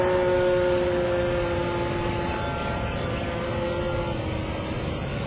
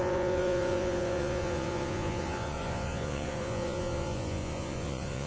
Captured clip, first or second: first